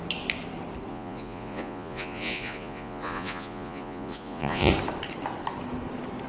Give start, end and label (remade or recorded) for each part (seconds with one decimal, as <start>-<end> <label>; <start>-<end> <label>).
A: 0.0-0.9 recorded; 0.9-4.7 remade; 4.7-6.3 recorded